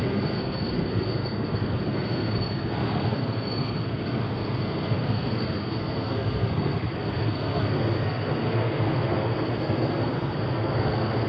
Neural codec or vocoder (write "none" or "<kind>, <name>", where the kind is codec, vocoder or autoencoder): codec, SNAC